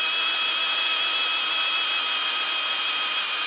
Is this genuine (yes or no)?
yes